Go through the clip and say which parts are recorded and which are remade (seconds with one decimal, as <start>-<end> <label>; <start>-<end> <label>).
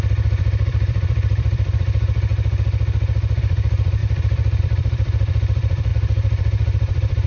0.0-2.3 remade; 2.3-3.4 recorded; 3.4-7.3 remade